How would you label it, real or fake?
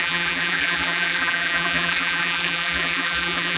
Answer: fake